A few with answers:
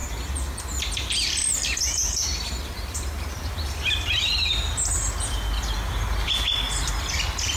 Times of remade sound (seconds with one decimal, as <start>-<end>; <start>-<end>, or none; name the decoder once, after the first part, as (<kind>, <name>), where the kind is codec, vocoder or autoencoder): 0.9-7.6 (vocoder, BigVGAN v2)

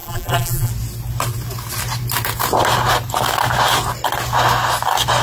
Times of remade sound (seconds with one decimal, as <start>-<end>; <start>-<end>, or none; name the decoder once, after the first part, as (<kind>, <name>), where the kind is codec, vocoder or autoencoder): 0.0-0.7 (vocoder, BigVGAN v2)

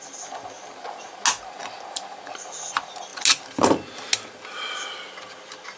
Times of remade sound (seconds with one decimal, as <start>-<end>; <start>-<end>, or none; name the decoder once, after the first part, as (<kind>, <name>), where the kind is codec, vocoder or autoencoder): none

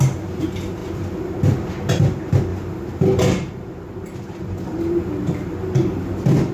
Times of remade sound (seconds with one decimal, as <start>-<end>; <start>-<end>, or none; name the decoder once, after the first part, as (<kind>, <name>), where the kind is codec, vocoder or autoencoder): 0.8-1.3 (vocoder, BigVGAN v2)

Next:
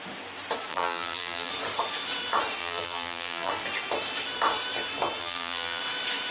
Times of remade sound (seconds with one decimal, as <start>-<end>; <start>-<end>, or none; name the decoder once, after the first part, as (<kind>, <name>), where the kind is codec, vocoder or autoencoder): 0.7-1.5 (vocoder, BigVGAN v2); 2.6-3.5; 5.2-5.8

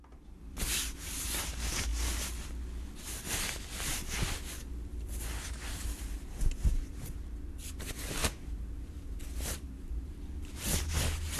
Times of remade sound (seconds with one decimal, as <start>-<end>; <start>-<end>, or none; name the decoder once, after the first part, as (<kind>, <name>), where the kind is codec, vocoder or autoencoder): 8.2-10.2 (vocoder, BigVGAN v2)

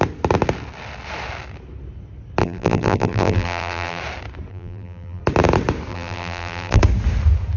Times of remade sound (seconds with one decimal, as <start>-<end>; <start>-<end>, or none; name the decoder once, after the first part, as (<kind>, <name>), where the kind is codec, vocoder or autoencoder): 2.4-4.0 (vocoder, BigVGAN v2); 4.5-5.2; 5.9-6.8